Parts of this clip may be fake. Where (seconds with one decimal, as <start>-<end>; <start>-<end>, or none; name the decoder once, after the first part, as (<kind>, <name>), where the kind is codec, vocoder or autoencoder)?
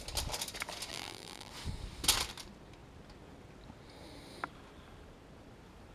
0.9-1.5 (vocoder, BigVGAN v2)